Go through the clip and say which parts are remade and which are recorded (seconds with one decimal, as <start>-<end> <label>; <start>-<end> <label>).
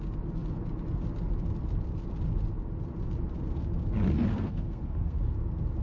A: 0.0-4.3 recorded; 4.3-5.2 remade; 5.2-5.8 recorded